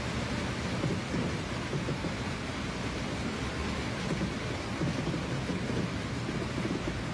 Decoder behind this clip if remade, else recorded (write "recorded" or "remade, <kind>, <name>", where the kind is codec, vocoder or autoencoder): recorded